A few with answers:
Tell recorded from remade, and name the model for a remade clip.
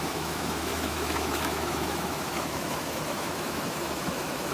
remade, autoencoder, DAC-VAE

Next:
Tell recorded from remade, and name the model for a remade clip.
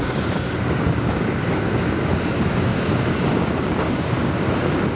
remade, codec, DAC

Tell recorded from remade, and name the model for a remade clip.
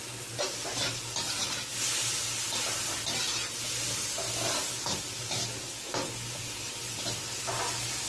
recorded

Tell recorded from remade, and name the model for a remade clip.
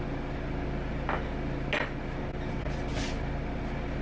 recorded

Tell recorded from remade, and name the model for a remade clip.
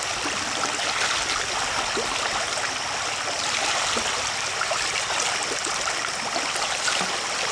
recorded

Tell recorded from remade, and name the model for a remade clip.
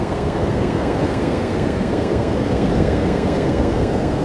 remade, codec, SNAC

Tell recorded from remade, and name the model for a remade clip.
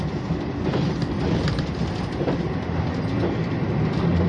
recorded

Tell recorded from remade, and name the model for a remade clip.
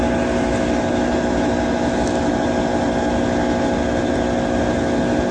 recorded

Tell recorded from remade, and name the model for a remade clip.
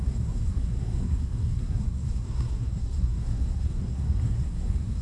remade, codec, SNAC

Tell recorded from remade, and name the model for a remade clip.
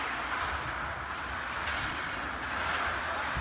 recorded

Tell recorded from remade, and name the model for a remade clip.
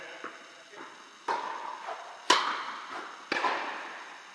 recorded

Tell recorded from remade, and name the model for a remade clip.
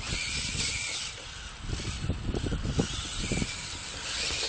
recorded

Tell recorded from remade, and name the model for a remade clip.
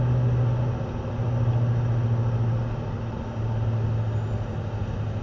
recorded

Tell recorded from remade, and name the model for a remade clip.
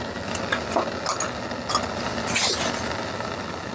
recorded